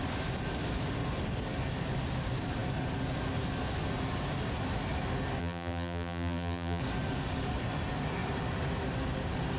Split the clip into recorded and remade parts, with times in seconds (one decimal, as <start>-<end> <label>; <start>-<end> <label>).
0.0-5.4 recorded; 5.4-6.8 remade; 6.8-9.6 recorded